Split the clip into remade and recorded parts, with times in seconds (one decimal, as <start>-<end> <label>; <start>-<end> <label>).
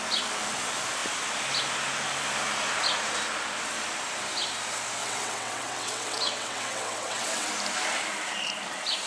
0.0-5.0 recorded; 5.0-7.5 remade; 7.5-9.1 recorded